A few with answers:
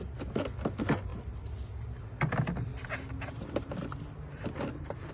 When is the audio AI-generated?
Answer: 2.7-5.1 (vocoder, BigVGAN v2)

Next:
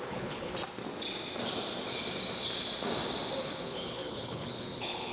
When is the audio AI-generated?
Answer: 0.0-0.5 (codec, HILCodec); 3.4-5.1

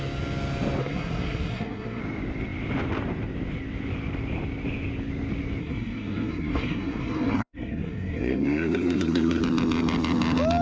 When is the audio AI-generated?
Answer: 0.8-2.0 (codec, SNAC); 5.6-9.4

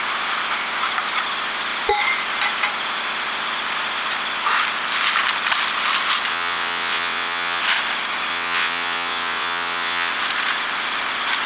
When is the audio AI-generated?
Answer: 6.3-7.6 (vocoder, WaveNeXt); 8.3-10.1